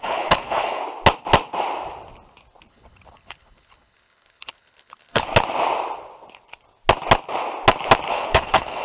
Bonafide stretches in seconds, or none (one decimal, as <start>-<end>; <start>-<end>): 0.8-2.7; 5.3-8.1